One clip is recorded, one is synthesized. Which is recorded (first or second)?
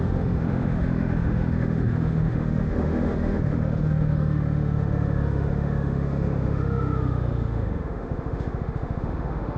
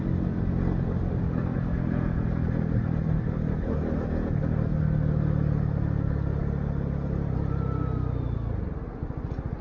second